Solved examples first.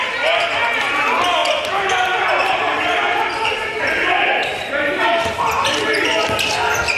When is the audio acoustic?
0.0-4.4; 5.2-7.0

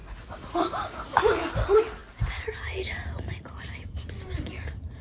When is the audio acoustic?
0.0-0.5

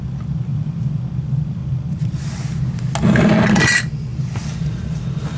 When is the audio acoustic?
0.0-0.5; 1.0-1.6; 2.6-4.1

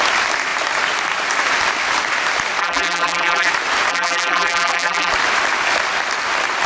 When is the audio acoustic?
0.0-2.6; 3.5-3.9; 5.1-6.7

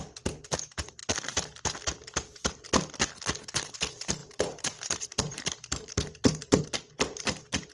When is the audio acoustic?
0.0-4.2; 6.6-7.7

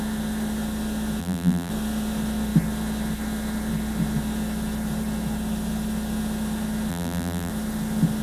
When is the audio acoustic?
0.0-1.2; 1.7-6.9; 7.5-8.2

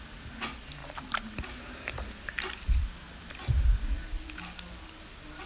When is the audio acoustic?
0.0-0.8; 2.1-5.5